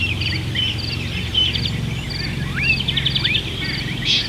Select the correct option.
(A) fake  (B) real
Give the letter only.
B